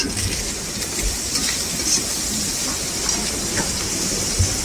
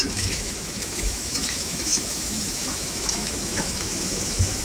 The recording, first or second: first